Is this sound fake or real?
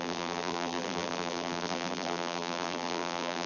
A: fake